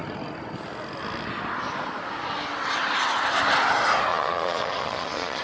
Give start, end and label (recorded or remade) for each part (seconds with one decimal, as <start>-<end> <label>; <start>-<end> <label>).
0.0-4.1 recorded; 4.1-5.4 remade